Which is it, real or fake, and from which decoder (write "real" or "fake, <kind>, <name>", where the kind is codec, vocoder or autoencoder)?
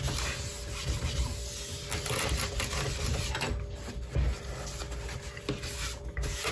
real